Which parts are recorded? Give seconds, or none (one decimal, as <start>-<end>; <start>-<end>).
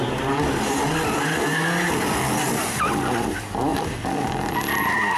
0.0-5.2